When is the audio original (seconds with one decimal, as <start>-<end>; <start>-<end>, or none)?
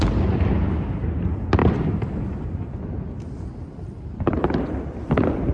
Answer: 0.0-5.5